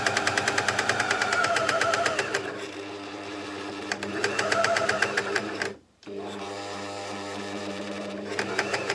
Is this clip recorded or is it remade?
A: remade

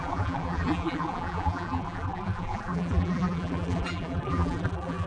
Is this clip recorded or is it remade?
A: remade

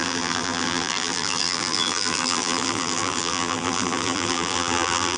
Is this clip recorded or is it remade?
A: remade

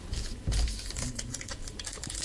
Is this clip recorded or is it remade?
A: remade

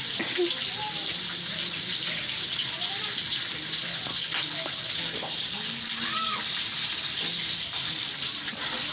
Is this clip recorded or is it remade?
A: remade